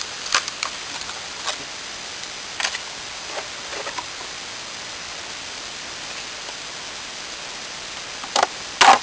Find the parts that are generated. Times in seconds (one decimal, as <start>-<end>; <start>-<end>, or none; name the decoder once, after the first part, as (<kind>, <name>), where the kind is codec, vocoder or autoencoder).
none